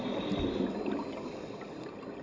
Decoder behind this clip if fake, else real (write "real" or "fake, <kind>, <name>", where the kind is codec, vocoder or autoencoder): real